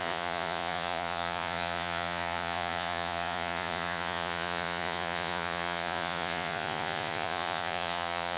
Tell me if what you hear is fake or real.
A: fake